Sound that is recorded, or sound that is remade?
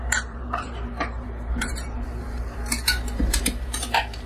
remade